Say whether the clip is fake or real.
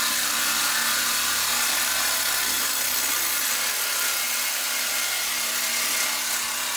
real